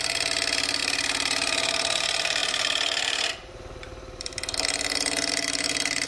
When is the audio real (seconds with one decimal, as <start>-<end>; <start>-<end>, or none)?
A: 4.3-5.3